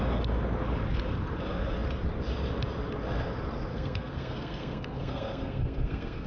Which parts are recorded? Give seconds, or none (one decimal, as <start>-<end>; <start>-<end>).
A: 0.0-3.7

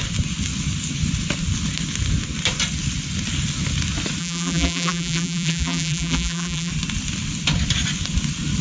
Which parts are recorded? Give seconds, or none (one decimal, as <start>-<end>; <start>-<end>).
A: 0.0-4.2; 6.7-8.6

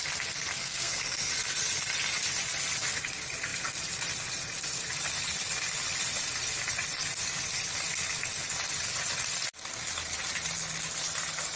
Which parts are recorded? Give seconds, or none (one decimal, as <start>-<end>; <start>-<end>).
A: 0.0-0.6; 1.3-11.6

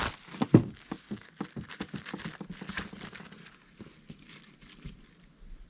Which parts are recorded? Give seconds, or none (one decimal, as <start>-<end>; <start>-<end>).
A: 0.0-0.6; 1.3-5.7